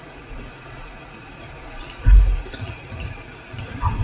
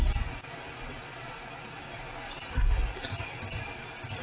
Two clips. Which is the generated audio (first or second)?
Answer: first